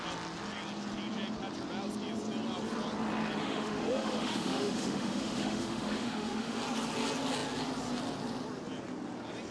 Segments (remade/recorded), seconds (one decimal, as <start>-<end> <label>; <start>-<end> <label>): 0.0-3.4 recorded; 3.4-6.6 remade; 6.6-9.5 recorded